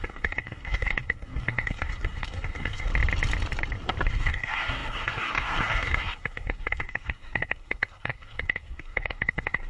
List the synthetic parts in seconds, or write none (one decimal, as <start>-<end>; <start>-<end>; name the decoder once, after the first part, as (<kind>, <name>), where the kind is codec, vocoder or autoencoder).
0.0-2.9 (codec, SNAC); 4.1-9.7